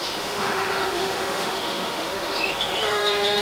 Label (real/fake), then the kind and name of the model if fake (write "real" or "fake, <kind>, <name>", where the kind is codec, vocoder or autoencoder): fake, autoencoder, DAC-VAE